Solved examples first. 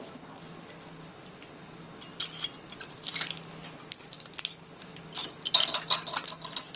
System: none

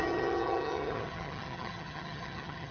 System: vocoder, HiFi-GAN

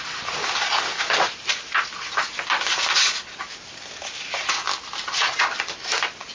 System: none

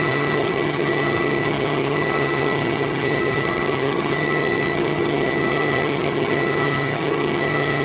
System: vocoder, HiFi-GAN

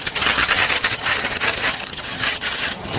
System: vocoder, HiFi-GAN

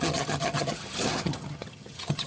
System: vocoder, HiFi-GAN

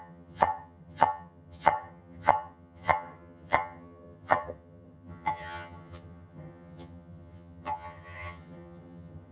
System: vocoder, HiFi-GAN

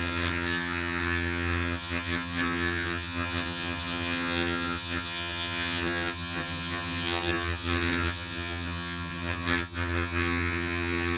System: vocoder, HiFi-GAN